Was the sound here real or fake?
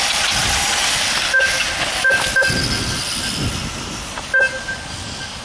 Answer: real